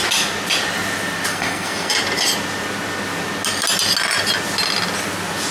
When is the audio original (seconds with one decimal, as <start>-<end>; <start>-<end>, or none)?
0.0-1.3; 1.9-5.5